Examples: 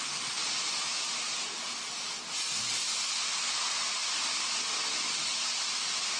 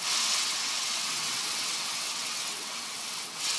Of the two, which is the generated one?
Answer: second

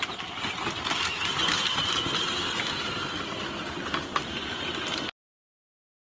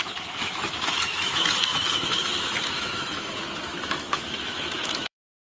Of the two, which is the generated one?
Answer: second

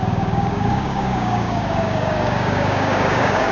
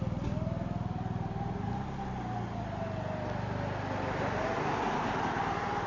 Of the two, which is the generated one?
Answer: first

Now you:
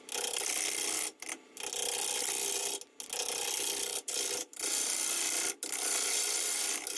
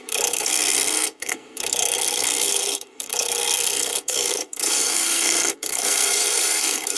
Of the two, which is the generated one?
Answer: second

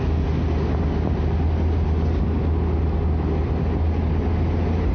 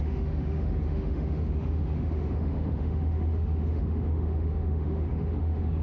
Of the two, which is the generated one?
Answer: second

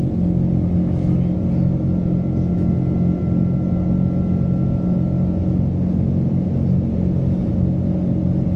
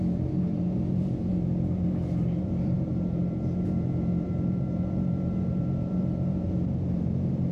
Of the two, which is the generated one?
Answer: second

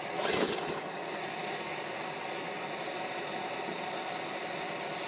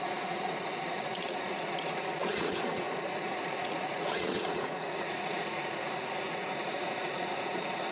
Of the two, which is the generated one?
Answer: second